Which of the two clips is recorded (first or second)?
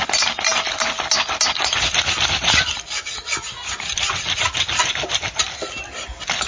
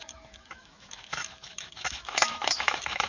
first